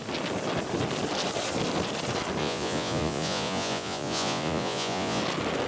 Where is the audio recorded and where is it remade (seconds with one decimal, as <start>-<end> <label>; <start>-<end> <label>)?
0.0-2.4 recorded; 2.4-5.2 remade; 5.2-5.7 recorded